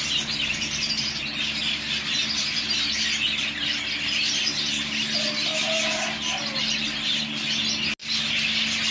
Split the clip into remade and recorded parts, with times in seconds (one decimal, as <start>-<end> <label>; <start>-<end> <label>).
0.0-8.0 recorded; 8.0-8.9 remade